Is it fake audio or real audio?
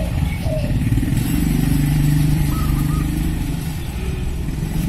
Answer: fake